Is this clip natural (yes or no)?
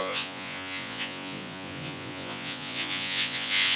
no